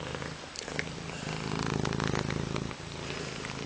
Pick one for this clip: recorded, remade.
recorded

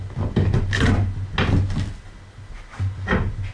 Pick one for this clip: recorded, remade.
recorded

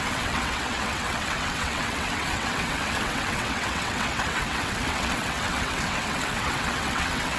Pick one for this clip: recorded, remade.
remade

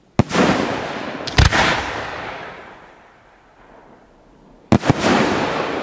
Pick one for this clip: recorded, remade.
recorded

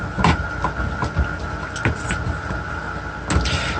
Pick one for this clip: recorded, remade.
recorded